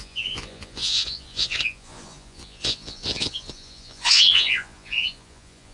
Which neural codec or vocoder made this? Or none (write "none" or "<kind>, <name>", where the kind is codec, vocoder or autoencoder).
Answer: vocoder, Vocos